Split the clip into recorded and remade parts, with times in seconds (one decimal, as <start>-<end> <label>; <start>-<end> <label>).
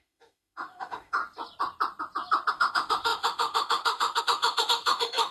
0.0-1.2 remade; 1.2-2.5 recorded; 2.5-5.3 remade